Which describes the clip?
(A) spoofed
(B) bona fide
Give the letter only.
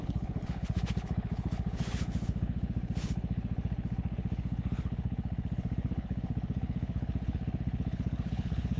A